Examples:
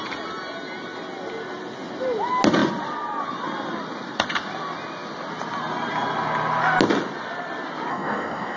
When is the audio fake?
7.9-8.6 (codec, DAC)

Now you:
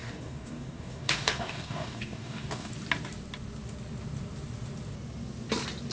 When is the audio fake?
0.0-2.7 (codec, DAC)

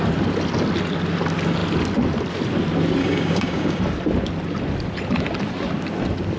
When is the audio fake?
3.0-3.8 (codec, DAC)

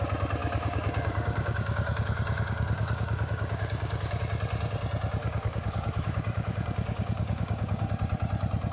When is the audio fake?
0.4-4.2 (codec, DAC); 5.2-7.9

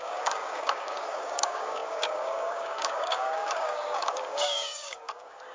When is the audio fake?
0.0-5.5 (codec, DAC)

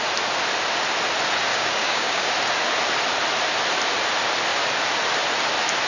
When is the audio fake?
1.5-2.3 (codec, DAC)